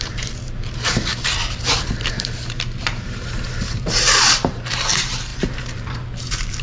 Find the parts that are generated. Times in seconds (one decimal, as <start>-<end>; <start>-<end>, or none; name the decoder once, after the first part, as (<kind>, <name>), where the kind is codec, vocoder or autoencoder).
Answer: 0.0-6.6 (vocoder, BigVGAN v2)